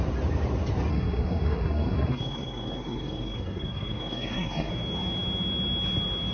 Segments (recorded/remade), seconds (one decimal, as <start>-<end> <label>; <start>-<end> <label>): 0.0-0.9 recorded; 0.9-4.7 remade; 4.7-6.3 recorded